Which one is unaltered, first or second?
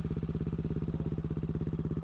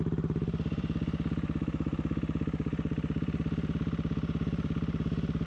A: first